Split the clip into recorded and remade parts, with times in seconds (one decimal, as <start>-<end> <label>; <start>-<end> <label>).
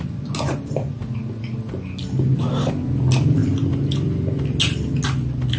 0.0-5.6 recorded